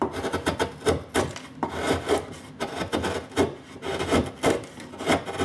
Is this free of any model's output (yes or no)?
yes